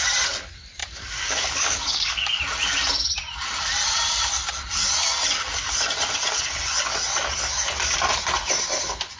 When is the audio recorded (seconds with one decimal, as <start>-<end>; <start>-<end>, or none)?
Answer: 0.0-0.8; 2.4-9.2